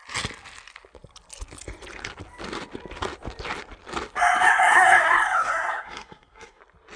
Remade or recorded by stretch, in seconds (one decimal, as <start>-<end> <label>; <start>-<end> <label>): 0.0-4.6 recorded; 4.6-6.6 remade; 6.6-7.0 recorded